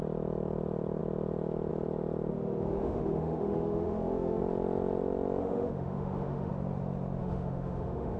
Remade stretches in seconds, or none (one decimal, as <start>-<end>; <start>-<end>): 2.3-4.4; 5.4-6.5; 7.2-8.2